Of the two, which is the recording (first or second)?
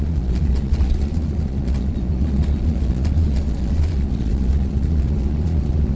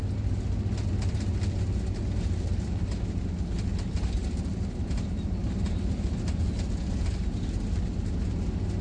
second